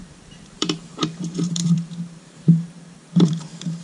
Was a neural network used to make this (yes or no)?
yes